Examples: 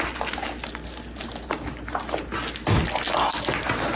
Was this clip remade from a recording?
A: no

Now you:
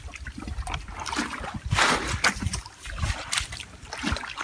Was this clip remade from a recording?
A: no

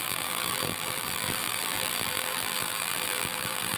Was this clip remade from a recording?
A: yes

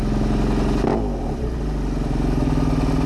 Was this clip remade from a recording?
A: no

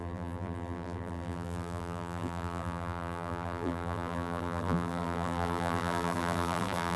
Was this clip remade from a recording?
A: yes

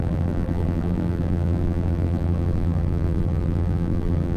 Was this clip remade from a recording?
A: yes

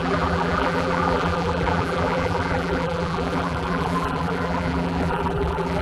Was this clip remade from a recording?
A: yes